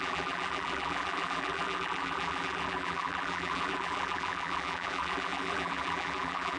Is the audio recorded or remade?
remade